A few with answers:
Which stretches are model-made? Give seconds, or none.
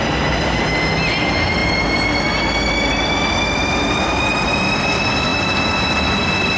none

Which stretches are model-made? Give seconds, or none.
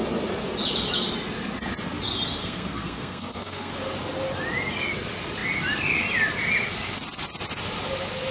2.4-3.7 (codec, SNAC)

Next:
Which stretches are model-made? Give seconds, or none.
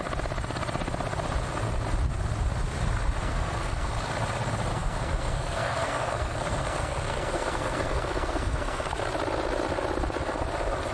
3.2-3.9 (codec, SNAC); 4.7-9.0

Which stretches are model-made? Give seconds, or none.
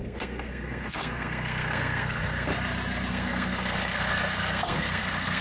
0.0-2.5 (codec, SNAC); 3.1-5.4